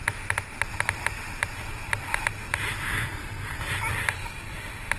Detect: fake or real real